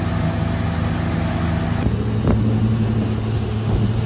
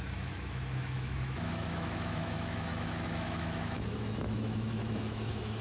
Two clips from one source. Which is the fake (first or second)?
second